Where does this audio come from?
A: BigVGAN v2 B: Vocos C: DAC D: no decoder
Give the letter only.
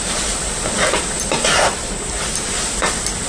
A